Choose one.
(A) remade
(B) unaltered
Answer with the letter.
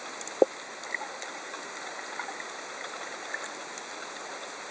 B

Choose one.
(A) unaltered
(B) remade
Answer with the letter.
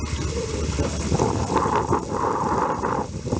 A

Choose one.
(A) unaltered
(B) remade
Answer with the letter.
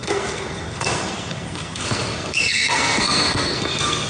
B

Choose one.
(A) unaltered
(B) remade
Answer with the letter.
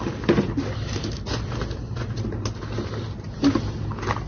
A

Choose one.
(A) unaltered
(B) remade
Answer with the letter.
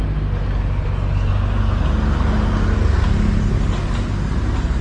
A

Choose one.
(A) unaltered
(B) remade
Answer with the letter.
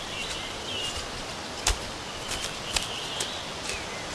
A